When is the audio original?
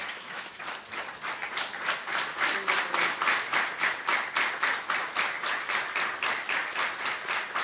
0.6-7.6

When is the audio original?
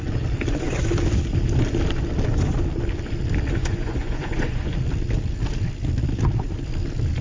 0.0-3.6; 4.7-7.2